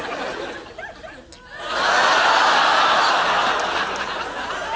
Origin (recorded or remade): recorded